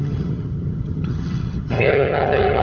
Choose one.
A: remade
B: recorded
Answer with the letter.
A